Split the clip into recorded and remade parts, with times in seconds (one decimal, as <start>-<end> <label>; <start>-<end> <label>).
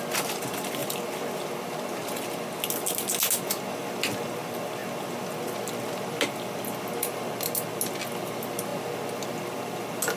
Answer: 0.0-10.2 recorded